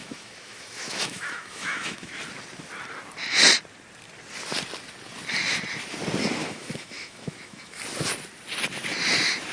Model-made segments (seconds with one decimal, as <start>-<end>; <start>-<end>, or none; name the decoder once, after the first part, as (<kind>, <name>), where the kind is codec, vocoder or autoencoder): 0.0-2.1 (autoencoder, DAC-VAE); 6.4-7.8